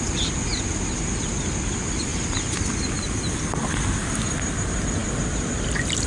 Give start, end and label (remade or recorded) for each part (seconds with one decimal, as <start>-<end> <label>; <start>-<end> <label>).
0.0-6.1 recorded